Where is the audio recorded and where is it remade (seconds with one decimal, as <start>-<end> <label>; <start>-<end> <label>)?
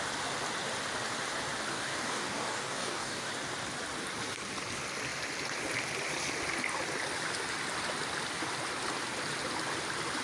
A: 0.0-1.7 recorded; 1.7-3.3 remade; 3.3-10.2 recorded